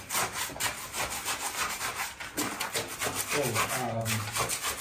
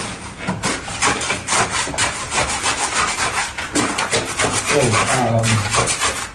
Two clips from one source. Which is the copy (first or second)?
second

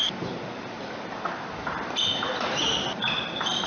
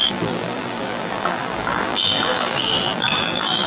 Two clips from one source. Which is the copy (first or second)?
second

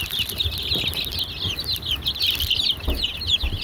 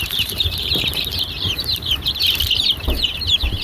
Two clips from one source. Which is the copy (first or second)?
second